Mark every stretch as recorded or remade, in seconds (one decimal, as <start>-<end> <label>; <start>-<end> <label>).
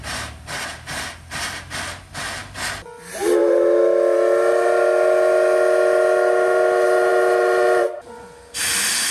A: 0.0-9.1 recorded